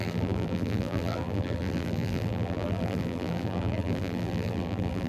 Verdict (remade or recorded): remade